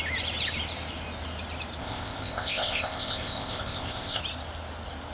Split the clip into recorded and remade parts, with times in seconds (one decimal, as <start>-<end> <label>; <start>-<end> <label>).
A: 0.0-1.8 recorded; 1.8-4.2 remade; 4.2-5.1 recorded